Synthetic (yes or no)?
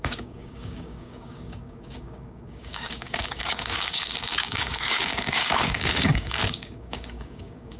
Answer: yes